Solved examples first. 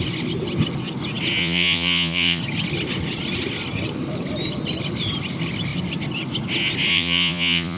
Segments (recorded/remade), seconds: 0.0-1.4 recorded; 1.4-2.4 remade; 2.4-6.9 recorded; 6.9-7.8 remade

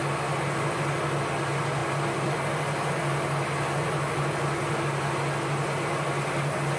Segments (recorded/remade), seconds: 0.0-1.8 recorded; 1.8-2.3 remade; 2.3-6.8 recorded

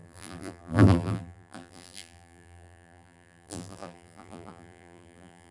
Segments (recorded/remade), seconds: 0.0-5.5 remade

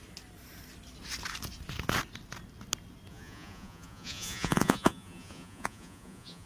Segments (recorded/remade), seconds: 0.0-3.1 recorded; 3.1-6.5 remade

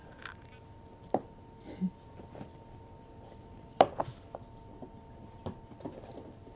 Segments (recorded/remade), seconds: 0.0-6.6 recorded